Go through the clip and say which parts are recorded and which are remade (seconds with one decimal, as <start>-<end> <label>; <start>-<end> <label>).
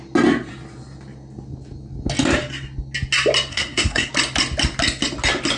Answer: 0.0-3.5 recorded; 3.5-4.1 remade; 4.1-5.6 recorded